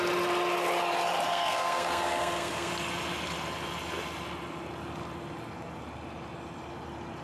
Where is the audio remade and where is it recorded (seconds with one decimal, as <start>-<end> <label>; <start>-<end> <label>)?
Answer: 0.0-1.3 recorded; 1.3-2.7 remade; 2.7-7.2 recorded